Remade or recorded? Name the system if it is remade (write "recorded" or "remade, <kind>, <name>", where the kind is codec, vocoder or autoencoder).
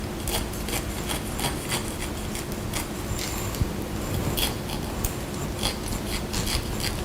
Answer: recorded